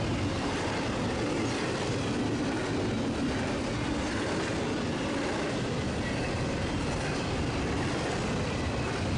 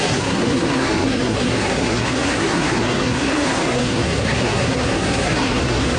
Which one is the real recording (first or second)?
first